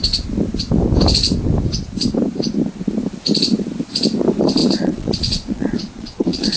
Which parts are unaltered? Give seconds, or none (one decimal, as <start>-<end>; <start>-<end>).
0.0-4.6